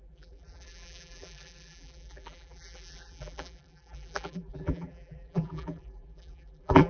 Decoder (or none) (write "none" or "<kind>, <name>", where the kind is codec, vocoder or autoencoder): vocoder, BigVGAN v2